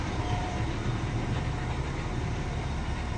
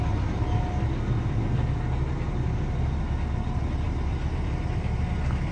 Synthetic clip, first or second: first